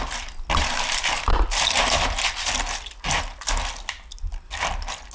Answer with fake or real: real